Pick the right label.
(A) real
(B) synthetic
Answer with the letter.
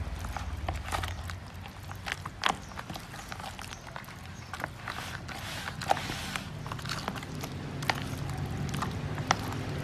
A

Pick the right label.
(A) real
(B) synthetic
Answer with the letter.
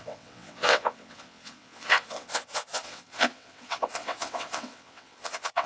B